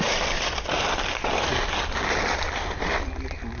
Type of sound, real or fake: real